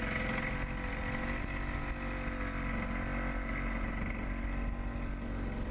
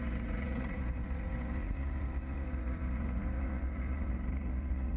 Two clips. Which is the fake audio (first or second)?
second